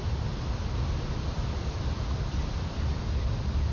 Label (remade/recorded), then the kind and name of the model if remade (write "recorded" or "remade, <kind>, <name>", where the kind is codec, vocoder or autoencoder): recorded